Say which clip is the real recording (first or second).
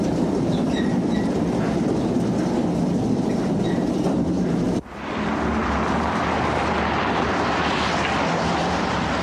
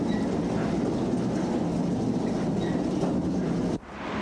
second